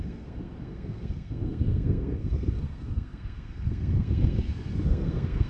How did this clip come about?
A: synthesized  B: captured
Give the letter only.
A